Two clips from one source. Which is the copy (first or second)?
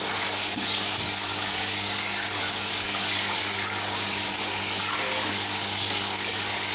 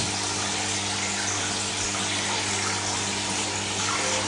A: first